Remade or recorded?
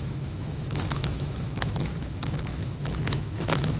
remade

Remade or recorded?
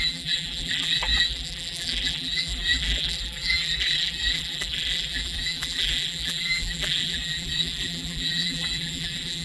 remade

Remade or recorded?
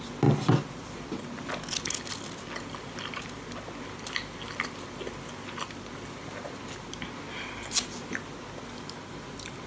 recorded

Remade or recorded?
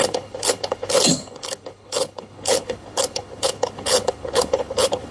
remade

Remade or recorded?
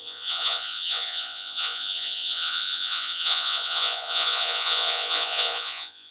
remade